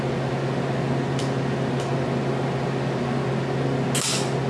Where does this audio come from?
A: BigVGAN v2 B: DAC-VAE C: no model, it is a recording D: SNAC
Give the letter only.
C